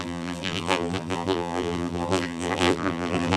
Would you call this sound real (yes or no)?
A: no